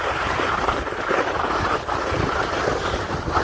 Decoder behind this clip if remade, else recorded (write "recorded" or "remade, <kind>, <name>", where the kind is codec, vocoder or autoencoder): remade, vocoder, BigVGAN v2